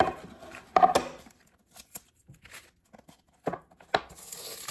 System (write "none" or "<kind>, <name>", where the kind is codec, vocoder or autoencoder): none